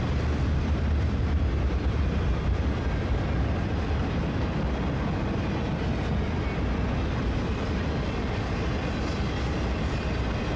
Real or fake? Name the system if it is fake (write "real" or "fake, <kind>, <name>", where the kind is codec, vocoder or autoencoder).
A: real